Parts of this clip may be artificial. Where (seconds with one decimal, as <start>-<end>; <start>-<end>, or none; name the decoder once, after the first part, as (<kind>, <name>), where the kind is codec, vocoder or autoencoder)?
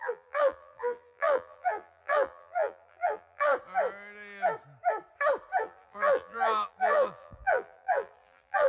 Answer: 0.0-3.5 (vocoder, BigVGAN v2); 5.6-8.7